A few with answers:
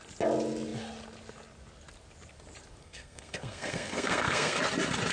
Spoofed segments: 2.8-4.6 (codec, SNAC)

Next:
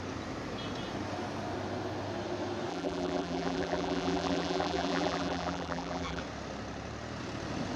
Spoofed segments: 2.7-6.2 (vocoder, BigVGAN v2)

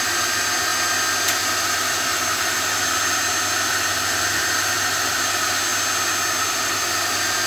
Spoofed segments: 0.0-0.7 (vocoder, BigVGAN v2); 1.3-3.2; 3.7-5.7; 6.5-7.5

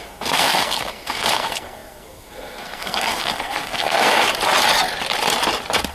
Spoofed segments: 0.0-4.3 (codec, SNAC)

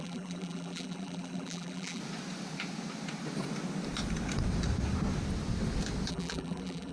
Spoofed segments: 0.0-2.0 (vocoder, BigVGAN v2); 6.1-6.9

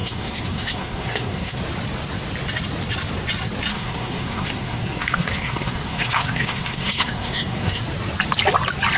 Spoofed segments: 0.0-1.6 (codec, SNAC); 3.7-7.8

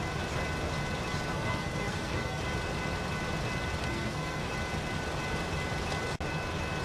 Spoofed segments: 1.3-2.4 (codec, SNAC); 3.9-4.5

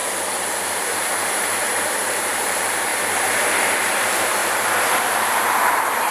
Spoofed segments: 0.6-4.4 (vocoder, BigVGAN v2); 5.0-6.1